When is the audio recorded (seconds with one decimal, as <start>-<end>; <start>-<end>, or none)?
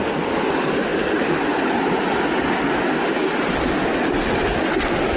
0.0-5.2